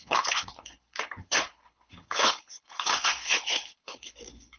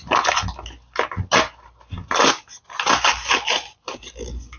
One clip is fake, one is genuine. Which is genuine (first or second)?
second